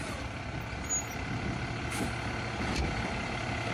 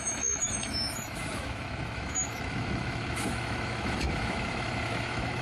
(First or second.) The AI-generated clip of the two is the second